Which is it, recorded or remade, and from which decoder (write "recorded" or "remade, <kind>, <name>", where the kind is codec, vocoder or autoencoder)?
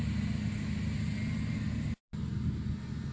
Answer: recorded